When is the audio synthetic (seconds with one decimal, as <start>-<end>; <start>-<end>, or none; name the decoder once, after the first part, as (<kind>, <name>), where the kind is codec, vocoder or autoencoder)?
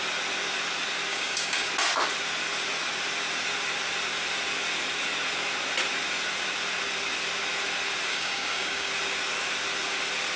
1.1-1.7 (codec, DAC); 8.1-8.9